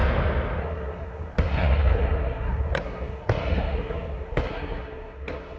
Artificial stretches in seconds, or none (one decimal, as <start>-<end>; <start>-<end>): 0.6-5.6